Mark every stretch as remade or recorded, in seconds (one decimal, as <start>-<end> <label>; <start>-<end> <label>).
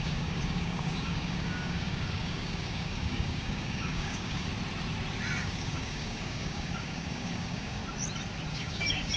0.0-4.5 remade; 4.5-5.4 recorded; 5.4-7.8 remade; 7.8-8.5 recorded; 8.5-9.2 remade